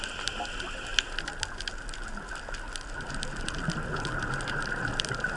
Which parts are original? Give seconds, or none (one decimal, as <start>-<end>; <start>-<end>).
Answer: 0.0-5.4